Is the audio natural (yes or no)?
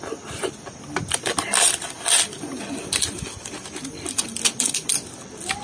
yes